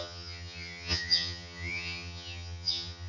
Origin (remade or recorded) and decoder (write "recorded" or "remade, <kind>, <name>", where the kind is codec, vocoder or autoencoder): remade, vocoder, HiFi-GAN